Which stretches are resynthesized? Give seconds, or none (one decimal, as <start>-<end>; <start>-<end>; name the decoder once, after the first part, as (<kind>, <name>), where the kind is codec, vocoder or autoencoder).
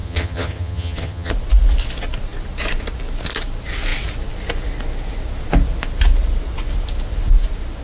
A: 0.0-1.3 (vocoder, HiFi-GAN)